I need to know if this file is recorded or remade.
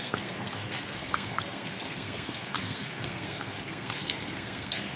remade